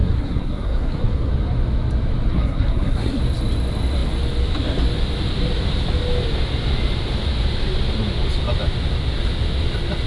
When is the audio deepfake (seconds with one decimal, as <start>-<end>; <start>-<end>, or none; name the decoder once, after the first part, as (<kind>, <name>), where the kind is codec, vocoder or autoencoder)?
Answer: 0.0-1.3 (codec, SNAC); 2.3-3.2